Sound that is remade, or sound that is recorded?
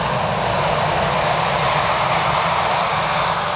recorded